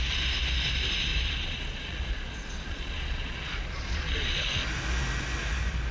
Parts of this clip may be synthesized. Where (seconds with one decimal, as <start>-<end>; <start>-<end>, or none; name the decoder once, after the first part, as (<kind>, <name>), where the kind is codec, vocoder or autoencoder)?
1.1-4.6 (vocoder, Vocos)